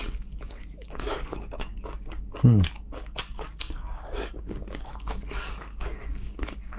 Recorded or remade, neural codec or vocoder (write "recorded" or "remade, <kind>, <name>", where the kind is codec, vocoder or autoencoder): remade, codec, DAC